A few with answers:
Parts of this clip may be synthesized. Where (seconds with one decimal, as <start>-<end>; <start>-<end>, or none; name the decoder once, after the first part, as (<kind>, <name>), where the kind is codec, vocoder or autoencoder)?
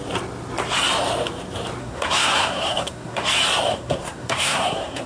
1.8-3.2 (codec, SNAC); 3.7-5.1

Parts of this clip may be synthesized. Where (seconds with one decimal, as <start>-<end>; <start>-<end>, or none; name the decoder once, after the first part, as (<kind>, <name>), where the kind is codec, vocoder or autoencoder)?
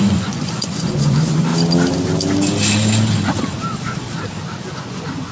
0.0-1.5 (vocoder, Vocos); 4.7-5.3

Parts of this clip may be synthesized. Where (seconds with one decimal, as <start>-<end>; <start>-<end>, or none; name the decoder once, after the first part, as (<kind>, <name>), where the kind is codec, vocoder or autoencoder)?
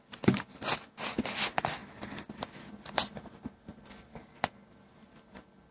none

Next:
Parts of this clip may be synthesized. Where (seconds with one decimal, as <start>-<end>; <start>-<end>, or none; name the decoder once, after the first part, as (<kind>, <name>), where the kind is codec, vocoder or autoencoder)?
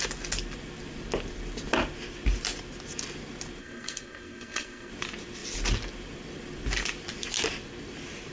3.6-4.9 (codec, SNAC)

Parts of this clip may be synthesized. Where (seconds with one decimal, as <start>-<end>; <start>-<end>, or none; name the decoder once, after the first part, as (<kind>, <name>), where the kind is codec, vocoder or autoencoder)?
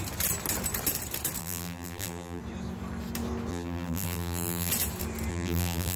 1.4-2.4 (vocoder, BigVGAN v2); 3.5-4.7; 5.3-6.0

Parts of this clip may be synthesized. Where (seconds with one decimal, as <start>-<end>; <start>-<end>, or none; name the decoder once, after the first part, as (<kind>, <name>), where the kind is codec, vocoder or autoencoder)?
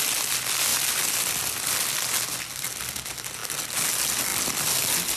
none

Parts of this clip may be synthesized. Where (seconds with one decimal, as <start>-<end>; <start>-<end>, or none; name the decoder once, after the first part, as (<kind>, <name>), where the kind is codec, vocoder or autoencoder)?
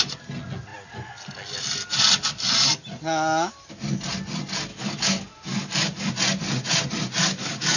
4.7-6.1 (codec, DAC); 7.2-7.8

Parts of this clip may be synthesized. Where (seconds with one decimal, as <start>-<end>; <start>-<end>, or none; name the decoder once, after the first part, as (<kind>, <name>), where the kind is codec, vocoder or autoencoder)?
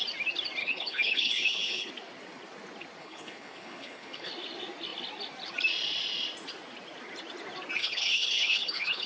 0.6-1.9 (codec, HILCodec); 3.0-4.3; 7.8-9.1